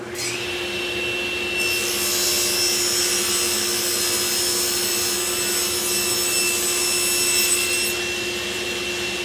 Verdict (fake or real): real